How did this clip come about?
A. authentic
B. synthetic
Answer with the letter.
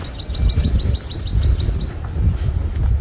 A